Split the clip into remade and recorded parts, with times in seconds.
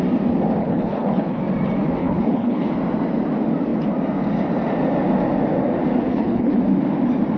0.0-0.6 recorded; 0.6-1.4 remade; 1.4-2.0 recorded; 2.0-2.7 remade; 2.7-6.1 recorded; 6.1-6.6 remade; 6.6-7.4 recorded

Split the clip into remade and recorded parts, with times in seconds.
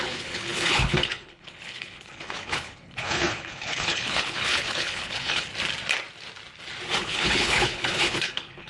0.0-5.5 remade; 5.5-7.0 recorded; 7.0-8.7 remade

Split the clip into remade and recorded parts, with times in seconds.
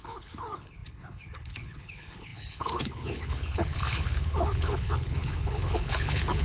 0.0-6.4 remade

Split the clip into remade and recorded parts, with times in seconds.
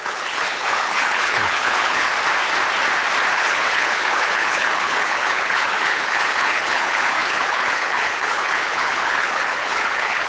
0.0-2.1 remade; 2.1-3.3 recorded; 3.3-10.3 remade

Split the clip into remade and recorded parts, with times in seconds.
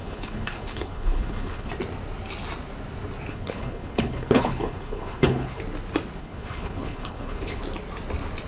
0.0-1.7 remade; 1.7-3.3 recorded; 3.3-5.6 remade; 5.6-6.2 recorded; 6.2-7.6 remade; 7.6-8.5 recorded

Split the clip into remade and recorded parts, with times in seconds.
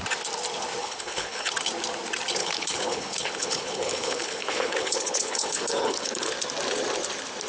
0.0-0.8 recorded; 0.8-1.5 remade; 1.5-2.4 recorded; 2.4-6.3 remade; 6.3-7.5 recorded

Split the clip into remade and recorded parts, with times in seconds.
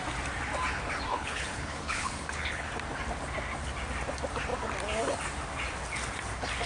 0.0-1.1 recorded; 1.1-2.7 remade; 2.7-6.7 recorded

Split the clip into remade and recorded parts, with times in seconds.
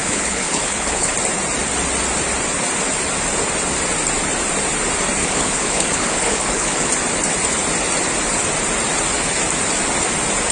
0.0-1.1 remade; 1.1-5.2 recorded; 5.2-6.9 remade; 6.9-10.5 recorded